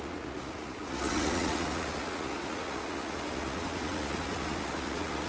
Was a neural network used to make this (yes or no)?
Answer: yes